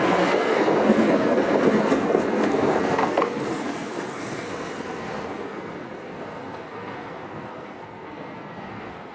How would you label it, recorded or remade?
remade